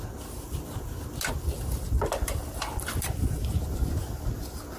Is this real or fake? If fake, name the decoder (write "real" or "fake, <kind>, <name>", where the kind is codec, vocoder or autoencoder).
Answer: real